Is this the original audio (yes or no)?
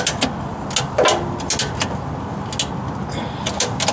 yes